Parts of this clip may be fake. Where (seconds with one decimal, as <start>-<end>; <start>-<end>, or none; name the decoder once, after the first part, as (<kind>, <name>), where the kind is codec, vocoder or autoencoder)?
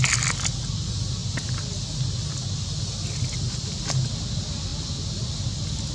none